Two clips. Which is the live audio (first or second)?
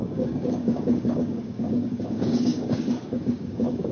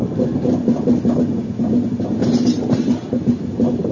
second